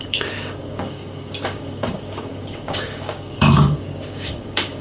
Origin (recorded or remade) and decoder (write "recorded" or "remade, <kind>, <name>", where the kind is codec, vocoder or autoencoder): remade, codec, DAC